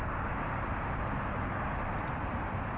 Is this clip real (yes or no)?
yes